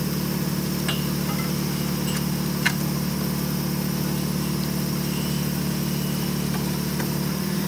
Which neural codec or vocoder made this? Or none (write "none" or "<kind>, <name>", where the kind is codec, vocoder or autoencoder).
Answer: none